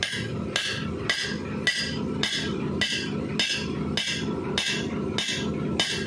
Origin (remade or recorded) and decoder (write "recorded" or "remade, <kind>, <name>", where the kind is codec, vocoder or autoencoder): recorded